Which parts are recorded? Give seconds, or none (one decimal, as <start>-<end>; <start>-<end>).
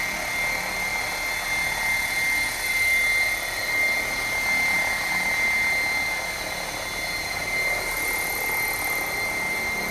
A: 0.0-9.9